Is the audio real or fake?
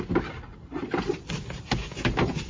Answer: real